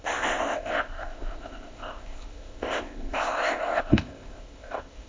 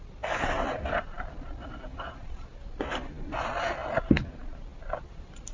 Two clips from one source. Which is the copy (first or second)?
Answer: first